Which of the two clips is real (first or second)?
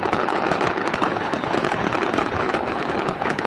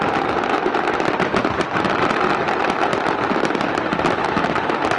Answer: second